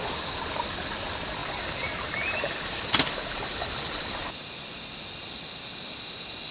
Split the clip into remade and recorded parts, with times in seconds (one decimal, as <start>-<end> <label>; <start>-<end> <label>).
0.0-6.5 recorded